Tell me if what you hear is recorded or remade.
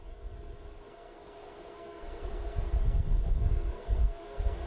remade